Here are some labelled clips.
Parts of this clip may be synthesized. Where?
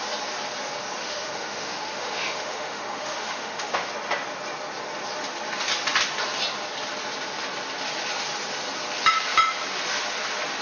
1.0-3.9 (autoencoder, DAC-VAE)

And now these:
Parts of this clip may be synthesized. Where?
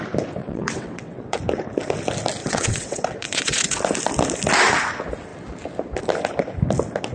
0.4-1.4 (vocoder, WaveNeXt); 2.4-3.8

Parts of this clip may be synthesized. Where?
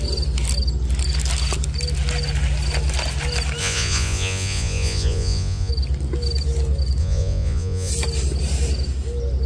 3.6-5.7 (vocoder, Vocos); 7.0-7.9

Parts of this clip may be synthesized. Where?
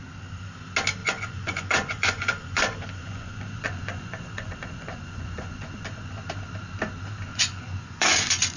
1.0-6.1 (vocoder, Vocos); 7.3-8.6